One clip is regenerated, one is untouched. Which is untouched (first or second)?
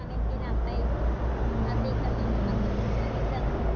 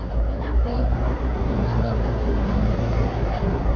first